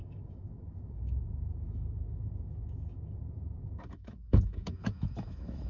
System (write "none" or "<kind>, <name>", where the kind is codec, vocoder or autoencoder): autoencoder, DAC-VAE